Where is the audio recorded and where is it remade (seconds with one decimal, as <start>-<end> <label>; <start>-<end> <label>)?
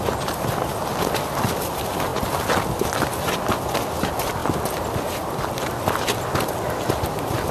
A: 0.0-7.5 recorded